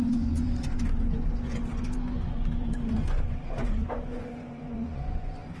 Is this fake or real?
fake